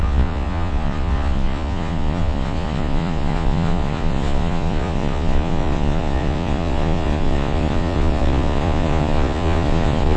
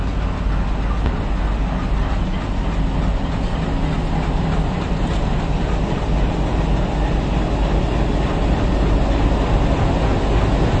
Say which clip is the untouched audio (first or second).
second